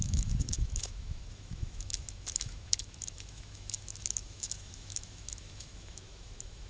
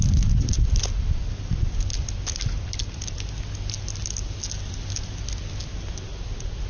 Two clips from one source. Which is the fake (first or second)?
first